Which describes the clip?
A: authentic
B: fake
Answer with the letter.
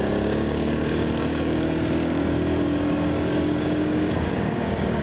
B